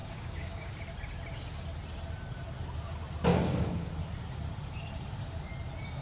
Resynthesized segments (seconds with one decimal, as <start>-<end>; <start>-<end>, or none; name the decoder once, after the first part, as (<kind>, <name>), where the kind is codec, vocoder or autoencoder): 0.0-0.7 (codec, DAC); 3.3-3.9